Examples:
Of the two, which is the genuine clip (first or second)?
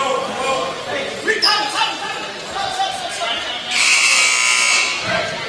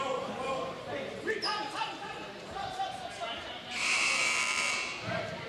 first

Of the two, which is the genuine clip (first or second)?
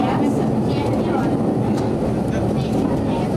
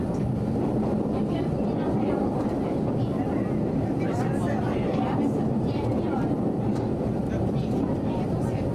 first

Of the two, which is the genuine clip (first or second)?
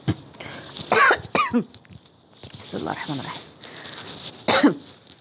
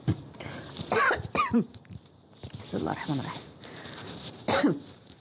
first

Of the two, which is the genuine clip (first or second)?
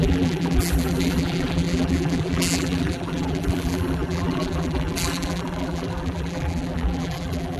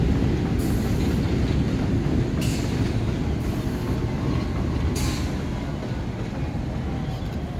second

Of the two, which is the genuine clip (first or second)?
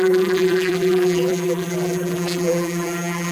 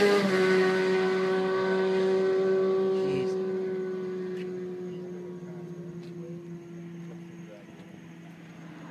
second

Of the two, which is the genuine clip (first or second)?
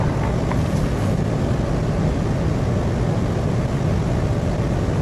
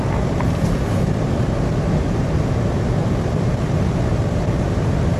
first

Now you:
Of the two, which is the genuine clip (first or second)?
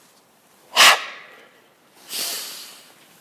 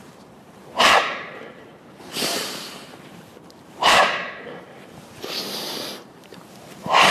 first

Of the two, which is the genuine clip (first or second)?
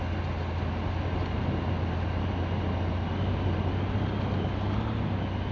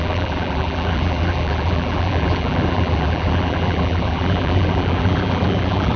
first